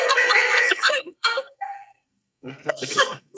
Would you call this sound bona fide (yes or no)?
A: no